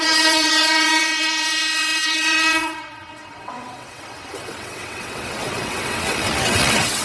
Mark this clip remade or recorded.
remade